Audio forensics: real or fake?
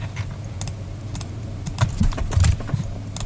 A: real